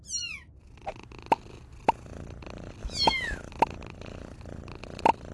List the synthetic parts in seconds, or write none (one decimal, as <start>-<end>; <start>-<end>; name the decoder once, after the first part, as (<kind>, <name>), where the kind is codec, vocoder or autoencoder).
2.8-3.5 (autoencoder, DAC-VAE)